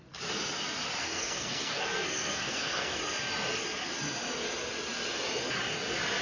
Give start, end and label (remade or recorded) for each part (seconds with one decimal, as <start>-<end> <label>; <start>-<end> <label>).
0.0-1.0 recorded; 1.0-3.0 remade; 3.0-6.2 recorded